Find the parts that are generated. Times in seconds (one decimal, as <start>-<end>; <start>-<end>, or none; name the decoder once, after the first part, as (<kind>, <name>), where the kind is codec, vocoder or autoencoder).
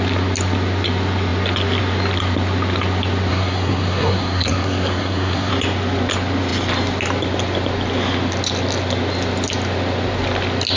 3.3-5.5 (codec, SNAC)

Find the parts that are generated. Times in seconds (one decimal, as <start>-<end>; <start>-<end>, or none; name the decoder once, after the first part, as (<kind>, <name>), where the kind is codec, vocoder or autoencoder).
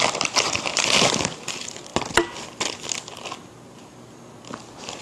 none